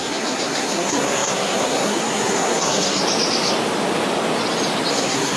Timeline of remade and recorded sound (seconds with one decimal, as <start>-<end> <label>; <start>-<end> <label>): 0.0-3.0 remade; 3.0-4.9 recorded; 4.9-5.4 remade